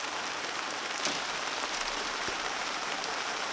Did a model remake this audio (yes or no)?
yes